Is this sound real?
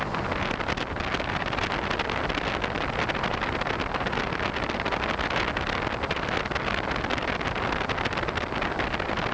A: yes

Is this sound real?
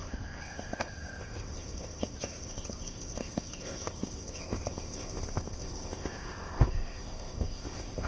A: no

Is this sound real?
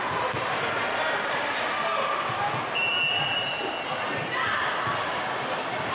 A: yes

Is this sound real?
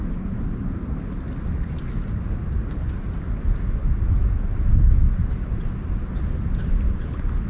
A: yes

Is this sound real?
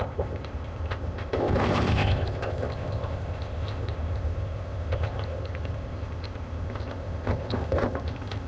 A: no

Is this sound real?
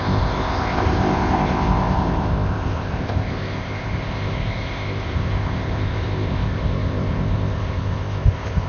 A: no